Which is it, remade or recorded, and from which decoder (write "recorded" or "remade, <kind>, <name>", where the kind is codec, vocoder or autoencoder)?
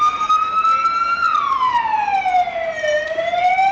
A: recorded